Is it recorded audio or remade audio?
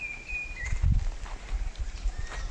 recorded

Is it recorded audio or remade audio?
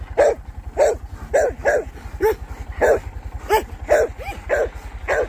recorded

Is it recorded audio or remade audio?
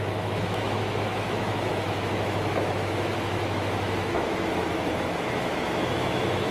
remade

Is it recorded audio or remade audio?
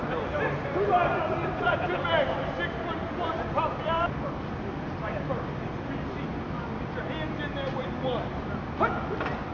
recorded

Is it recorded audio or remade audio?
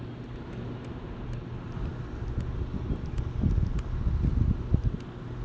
recorded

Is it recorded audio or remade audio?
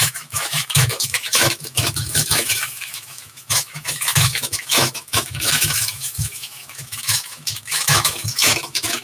remade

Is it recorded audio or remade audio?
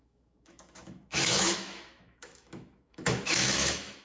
remade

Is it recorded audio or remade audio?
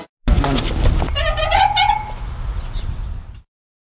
recorded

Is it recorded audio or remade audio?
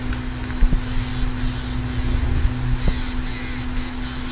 recorded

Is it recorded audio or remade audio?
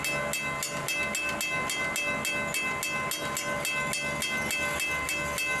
recorded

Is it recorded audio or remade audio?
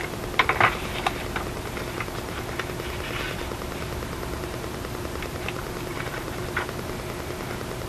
recorded